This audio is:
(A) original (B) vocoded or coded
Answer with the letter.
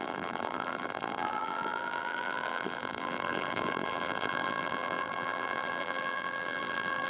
B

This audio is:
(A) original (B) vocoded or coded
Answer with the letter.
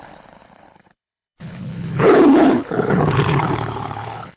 B